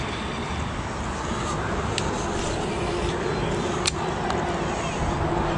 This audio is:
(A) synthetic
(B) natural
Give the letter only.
B